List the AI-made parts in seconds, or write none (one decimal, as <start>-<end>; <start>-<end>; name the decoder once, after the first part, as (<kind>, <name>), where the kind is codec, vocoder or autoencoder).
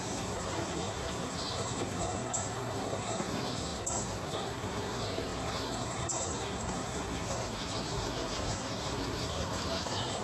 0.0-10.2 (codec, SNAC)